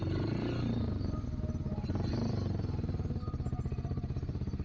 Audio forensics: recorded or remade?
recorded